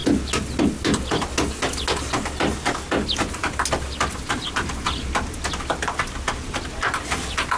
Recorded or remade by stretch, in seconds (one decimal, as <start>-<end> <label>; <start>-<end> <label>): 0.0-7.6 recorded